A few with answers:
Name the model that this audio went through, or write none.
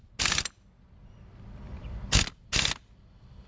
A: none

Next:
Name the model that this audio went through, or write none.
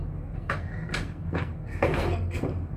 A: codec, SNAC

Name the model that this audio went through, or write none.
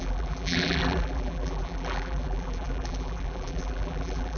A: vocoder, BigVGAN v2